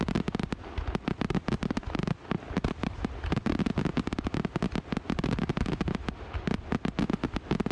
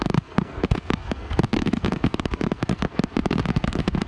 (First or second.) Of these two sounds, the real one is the first